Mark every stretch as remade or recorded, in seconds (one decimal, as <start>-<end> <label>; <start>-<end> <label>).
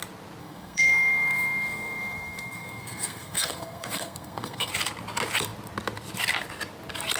0.0-0.4 recorded; 0.4-4.7 remade; 4.7-7.2 recorded